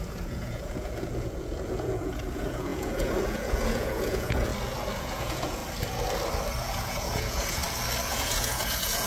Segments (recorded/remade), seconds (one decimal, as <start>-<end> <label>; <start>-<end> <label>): 0.0-4.5 remade; 4.5-5.0 recorded; 5.0-5.6 remade; 5.6-6.6 recorded; 6.6-7.6 remade; 7.6-8.1 recorded; 8.1-9.1 remade